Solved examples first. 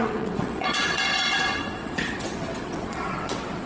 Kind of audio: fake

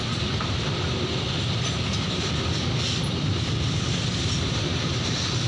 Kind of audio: real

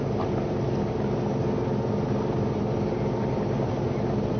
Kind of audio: real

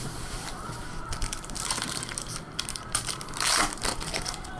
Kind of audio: fake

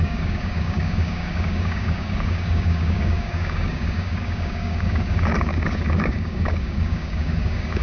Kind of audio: fake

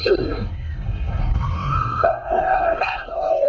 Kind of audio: fake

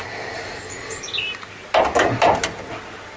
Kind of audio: real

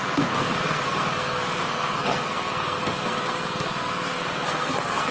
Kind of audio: fake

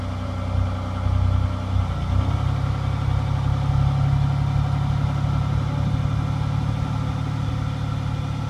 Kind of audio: real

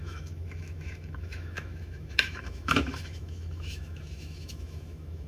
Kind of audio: fake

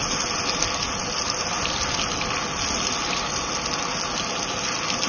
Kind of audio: real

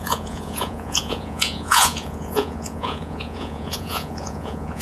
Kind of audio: fake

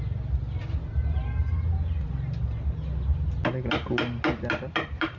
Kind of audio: real